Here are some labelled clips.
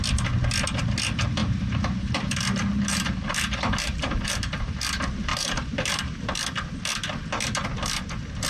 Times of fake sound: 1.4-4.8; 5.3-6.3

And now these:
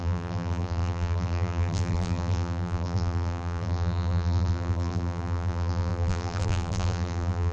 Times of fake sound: 0.0-7.5